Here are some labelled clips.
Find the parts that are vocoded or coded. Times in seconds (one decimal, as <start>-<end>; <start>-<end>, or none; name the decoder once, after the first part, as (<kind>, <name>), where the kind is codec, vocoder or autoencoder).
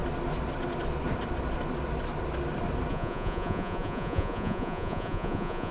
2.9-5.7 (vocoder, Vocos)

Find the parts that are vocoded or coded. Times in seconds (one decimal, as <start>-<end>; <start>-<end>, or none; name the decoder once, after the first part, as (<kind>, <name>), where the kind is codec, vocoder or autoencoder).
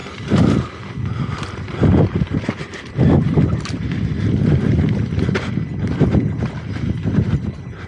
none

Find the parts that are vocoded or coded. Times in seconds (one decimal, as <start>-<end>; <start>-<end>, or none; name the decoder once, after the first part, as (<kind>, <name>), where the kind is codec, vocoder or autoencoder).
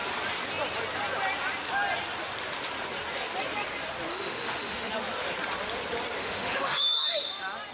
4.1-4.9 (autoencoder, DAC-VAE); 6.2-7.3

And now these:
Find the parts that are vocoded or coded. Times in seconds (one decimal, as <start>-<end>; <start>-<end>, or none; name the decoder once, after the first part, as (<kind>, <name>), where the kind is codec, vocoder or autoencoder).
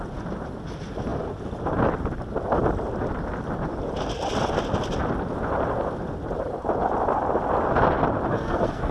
8.3-8.9 (codec, SNAC)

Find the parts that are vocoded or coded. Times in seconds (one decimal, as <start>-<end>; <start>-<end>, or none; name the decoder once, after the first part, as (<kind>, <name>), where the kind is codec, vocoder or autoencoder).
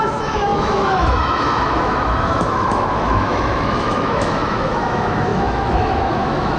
0.0-6.6 (autoencoder, DAC-VAE)